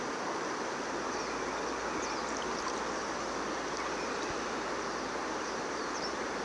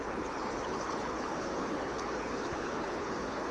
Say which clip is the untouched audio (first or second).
first